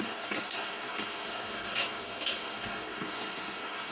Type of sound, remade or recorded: remade